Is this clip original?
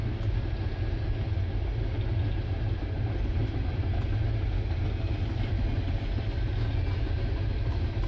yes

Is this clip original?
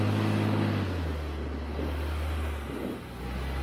yes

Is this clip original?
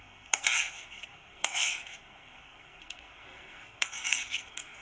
no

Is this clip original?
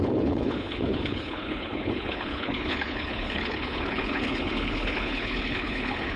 no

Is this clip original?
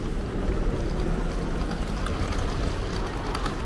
yes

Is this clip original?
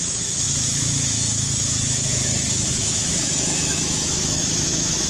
no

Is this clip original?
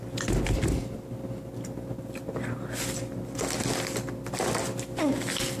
yes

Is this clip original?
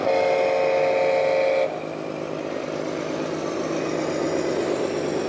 yes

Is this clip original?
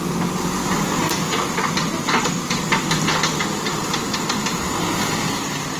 yes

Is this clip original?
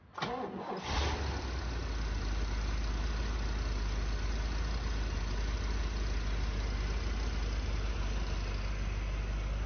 yes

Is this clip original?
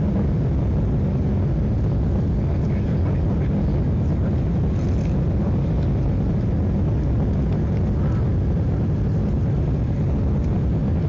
yes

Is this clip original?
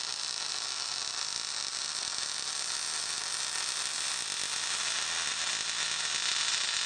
yes